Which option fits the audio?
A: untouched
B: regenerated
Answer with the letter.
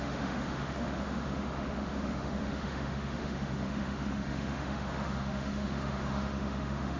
B